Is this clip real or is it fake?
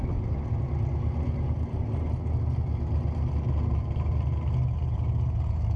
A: real